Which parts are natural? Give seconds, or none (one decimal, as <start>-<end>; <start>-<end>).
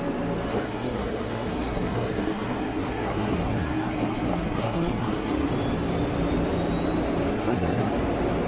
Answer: 0.0-0.5; 5.5-7.3; 7.9-8.5